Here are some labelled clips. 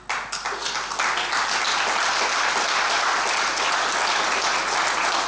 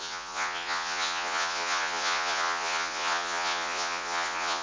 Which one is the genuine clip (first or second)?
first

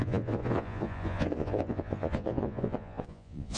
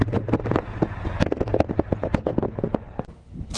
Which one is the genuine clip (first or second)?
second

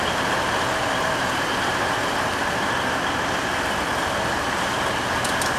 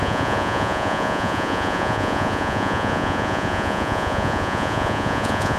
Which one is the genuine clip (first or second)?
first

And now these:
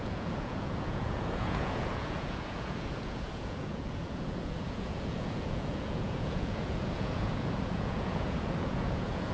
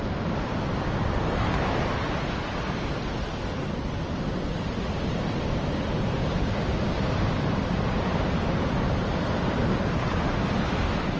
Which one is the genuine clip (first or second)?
second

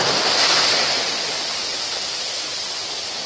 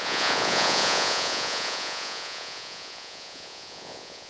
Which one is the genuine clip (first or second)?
first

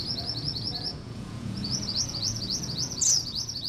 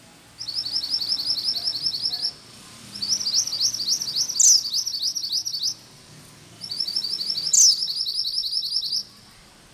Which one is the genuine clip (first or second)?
second